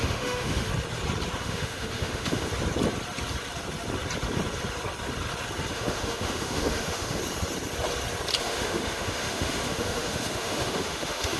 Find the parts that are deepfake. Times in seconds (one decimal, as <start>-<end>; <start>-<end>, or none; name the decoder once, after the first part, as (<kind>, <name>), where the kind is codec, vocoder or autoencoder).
0.0-0.7 (autoencoder, DAC-VAE); 1.4-2.5; 5.7-7.2; 8.4-11.4